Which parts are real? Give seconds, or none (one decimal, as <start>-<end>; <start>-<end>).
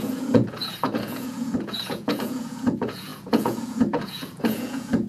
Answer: none